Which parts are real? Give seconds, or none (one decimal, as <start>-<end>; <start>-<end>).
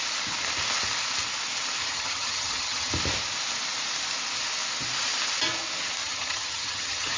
0.0-1.8; 2.9-6.0